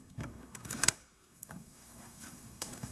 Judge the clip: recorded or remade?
remade